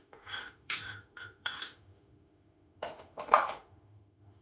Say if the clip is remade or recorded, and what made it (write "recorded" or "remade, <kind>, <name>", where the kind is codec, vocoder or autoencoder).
remade, autoencoder, DAC-VAE